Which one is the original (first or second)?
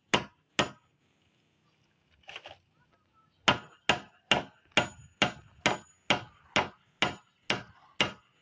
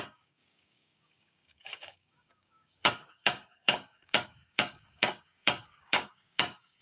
first